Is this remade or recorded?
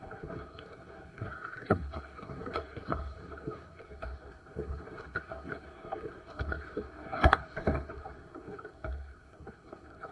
remade